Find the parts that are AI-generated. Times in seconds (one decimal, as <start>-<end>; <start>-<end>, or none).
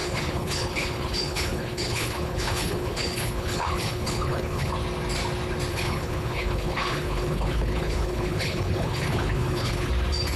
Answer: 0.0-4.7; 5.7-9.9